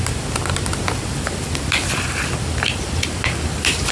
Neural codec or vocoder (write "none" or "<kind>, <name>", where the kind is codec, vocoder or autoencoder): none